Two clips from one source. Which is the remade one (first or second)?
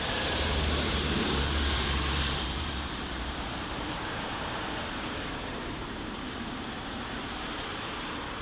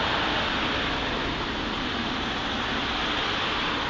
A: first